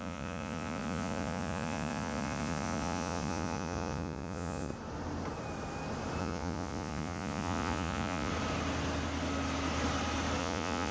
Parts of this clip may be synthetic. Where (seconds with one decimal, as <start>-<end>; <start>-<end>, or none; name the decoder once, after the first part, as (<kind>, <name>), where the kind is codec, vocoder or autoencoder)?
0.0-4.7 (vocoder, Vocos); 6.2-8.3; 10.4-10.9